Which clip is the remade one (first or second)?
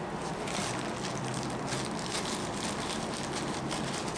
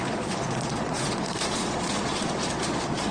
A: second